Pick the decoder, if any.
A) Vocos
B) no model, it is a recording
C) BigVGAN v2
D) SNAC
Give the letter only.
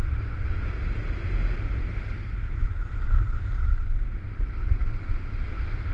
B